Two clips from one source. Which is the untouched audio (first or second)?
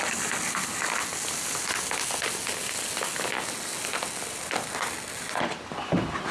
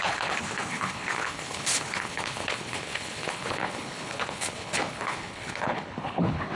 first